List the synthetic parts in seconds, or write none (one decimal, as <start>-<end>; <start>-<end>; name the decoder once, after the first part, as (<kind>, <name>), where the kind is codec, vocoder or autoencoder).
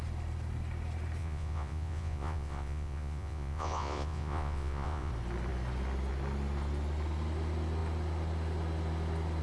1.2-5.1 (vocoder, Vocos)